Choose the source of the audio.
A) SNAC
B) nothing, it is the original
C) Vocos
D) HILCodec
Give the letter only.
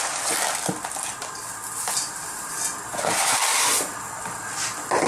B